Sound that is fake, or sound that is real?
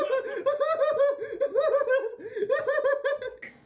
real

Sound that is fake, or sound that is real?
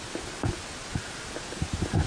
real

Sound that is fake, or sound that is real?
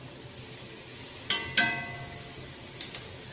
real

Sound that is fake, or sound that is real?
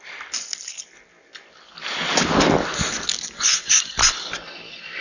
real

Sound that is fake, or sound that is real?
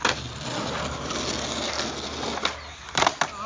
real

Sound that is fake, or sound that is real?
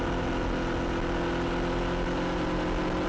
real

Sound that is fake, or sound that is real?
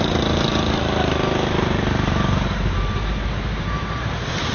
fake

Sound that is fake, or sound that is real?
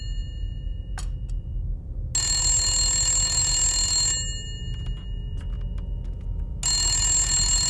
real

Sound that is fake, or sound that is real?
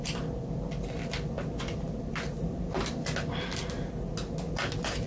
real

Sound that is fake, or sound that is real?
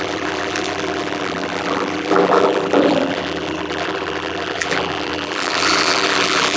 fake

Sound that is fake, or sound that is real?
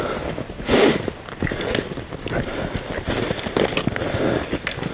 real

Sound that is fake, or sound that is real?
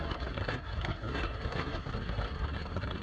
fake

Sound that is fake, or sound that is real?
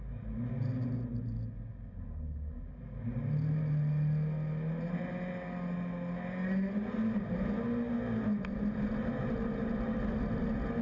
real